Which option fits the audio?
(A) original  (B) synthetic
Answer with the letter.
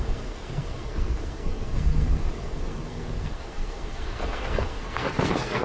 B